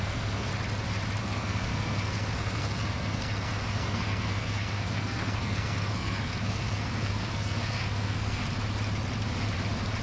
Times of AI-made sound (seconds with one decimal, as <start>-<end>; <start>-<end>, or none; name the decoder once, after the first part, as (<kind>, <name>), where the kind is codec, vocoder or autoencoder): 0.0-0.5 (codec, SNAC); 1.2-8.4